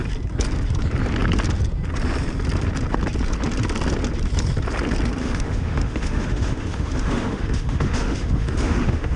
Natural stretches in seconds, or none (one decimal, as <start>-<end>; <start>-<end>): 0.0-5.2